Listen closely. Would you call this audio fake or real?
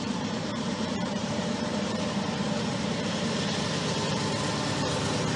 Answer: fake